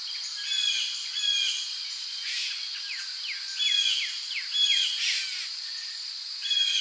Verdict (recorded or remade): recorded